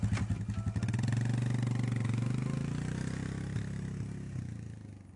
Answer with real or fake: real